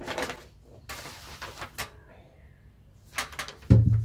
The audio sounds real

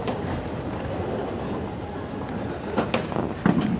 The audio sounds real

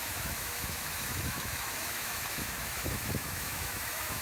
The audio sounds fake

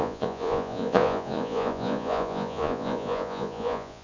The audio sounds fake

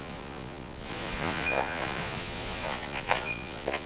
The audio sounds fake